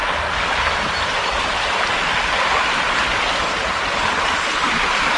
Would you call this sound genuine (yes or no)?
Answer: yes